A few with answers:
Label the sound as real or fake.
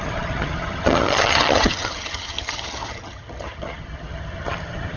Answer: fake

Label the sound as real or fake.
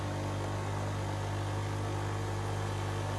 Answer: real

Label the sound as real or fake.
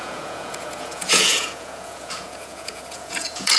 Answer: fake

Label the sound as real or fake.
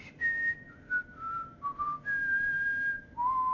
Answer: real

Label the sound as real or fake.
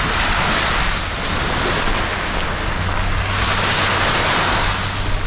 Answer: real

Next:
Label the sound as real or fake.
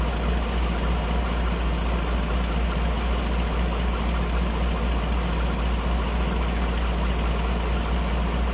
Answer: real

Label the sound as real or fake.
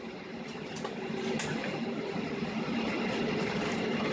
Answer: real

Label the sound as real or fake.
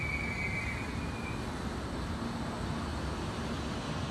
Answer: real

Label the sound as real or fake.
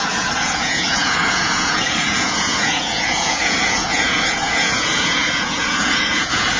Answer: fake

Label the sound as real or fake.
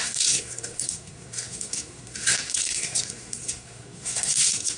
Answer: fake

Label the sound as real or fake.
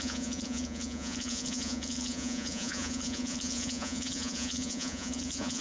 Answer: fake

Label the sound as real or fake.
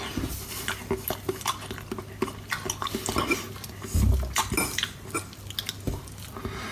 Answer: real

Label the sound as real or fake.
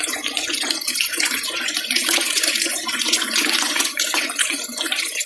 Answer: fake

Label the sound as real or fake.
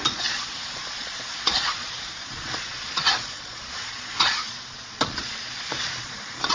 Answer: fake